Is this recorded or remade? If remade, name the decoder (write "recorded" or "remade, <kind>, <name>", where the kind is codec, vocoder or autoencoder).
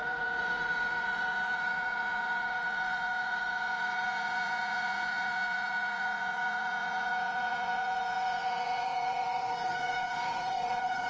remade, vocoder, Vocos